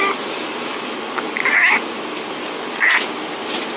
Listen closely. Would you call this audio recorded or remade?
recorded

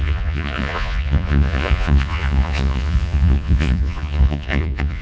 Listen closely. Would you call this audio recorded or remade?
remade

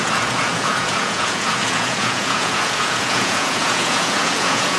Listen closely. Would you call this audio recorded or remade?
remade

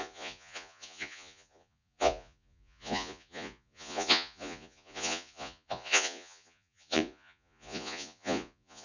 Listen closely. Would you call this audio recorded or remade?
remade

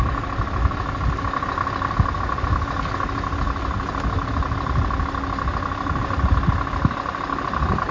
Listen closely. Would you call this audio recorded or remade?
recorded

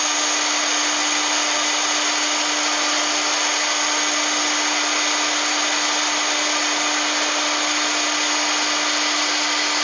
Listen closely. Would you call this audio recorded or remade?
recorded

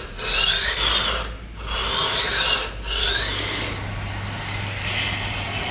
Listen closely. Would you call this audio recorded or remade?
recorded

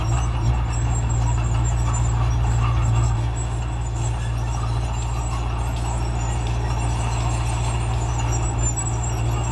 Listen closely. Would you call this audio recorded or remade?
recorded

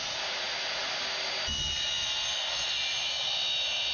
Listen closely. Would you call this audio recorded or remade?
recorded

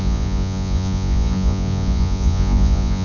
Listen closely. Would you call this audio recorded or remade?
remade